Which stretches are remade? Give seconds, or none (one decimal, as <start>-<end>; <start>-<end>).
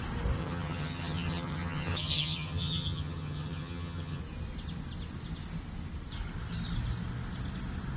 0.4-4.2